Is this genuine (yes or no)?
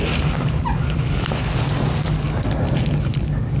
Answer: yes